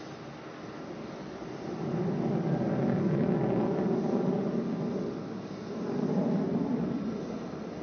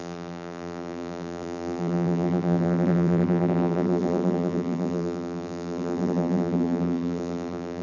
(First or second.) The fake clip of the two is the second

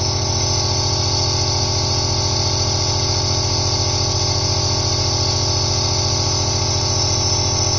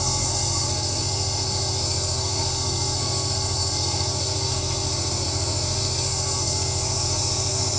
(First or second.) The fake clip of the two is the second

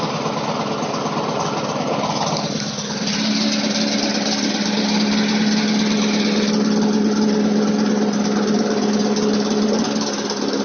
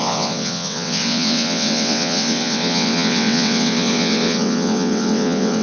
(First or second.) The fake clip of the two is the second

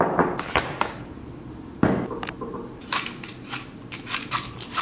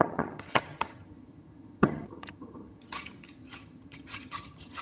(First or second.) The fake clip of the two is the second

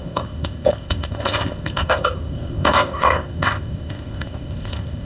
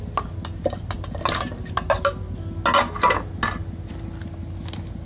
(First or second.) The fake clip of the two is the first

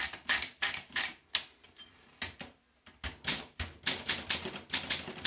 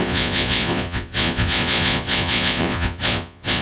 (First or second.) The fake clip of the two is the second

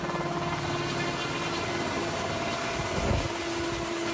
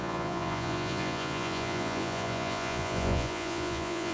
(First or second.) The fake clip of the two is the second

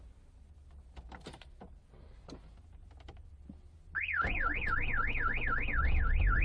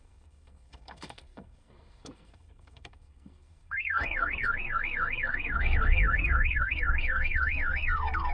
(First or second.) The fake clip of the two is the second